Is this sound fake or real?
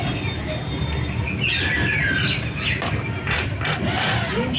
real